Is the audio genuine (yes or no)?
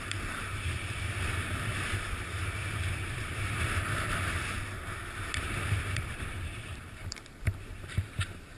no